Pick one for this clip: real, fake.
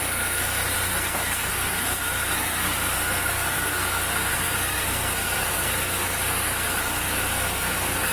fake